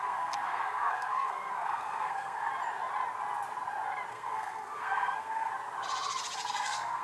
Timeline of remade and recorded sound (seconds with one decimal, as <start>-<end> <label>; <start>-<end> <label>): 0.0-2.5 remade; 2.5-4.1 recorded; 4.1-5.5 remade; 5.5-6.5 recorded; 6.5-7.0 remade